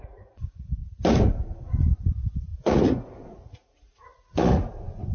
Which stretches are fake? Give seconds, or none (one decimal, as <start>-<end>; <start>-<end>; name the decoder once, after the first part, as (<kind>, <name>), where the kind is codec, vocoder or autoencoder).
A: 0.0-0.8 (vocoder, Vocos); 2.0-5.1